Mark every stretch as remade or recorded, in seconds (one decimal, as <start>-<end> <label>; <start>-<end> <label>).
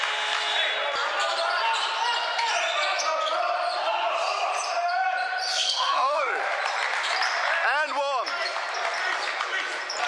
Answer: 0.0-5.5 recorded; 5.5-6.3 remade; 6.3-10.1 recorded